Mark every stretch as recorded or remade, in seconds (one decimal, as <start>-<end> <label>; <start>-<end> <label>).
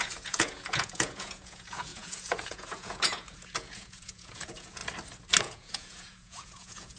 0.0-4.8 remade; 4.8-5.4 recorded; 5.4-7.0 remade